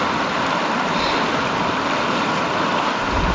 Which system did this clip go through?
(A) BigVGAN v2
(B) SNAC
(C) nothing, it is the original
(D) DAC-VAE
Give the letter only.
C